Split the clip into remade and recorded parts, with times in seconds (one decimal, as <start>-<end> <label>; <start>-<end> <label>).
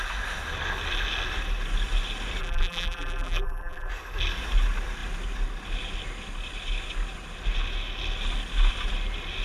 0.0-2.4 recorded; 2.4-3.9 remade; 3.9-9.4 recorded